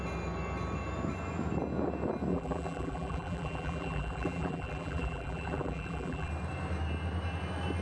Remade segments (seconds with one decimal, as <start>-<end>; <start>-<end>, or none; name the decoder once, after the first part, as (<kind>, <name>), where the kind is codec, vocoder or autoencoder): 2.3-6.3 (vocoder, BigVGAN v2)